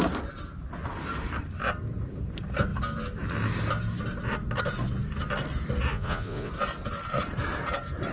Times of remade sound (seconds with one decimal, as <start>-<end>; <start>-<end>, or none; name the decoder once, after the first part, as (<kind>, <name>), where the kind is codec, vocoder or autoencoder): 5.9-6.5 (vocoder, Vocos)